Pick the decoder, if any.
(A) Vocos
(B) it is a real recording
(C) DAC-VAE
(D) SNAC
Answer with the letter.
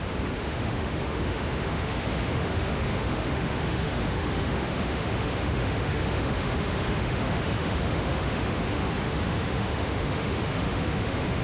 C